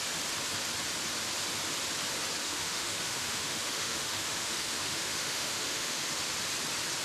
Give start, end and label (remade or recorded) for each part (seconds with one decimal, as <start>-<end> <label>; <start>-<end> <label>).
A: 0.0-2.4 recorded; 2.4-6.2 remade; 6.2-7.0 recorded